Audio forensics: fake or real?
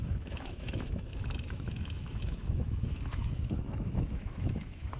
fake